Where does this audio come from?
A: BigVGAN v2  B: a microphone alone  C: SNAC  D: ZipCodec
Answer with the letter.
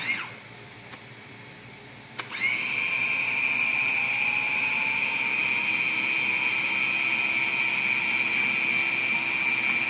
B